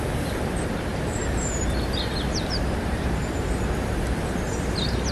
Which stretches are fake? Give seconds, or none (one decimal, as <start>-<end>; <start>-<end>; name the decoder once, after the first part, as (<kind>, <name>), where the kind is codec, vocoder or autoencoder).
0.9-4.0 (vocoder, BigVGAN v2)